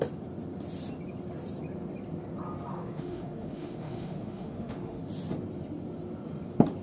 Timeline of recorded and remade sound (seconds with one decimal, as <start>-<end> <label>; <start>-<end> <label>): 0.0-2.7 recorded; 2.7-5.0 remade; 5.0-6.8 recorded